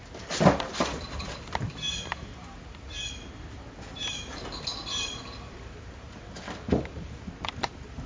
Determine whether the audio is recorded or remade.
remade